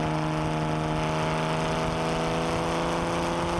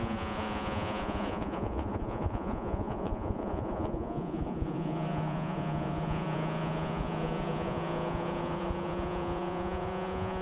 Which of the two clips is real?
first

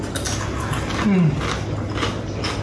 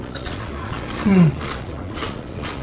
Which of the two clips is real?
first